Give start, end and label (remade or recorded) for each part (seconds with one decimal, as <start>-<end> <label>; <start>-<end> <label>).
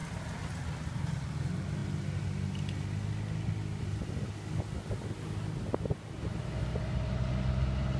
0.0-8.0 recorded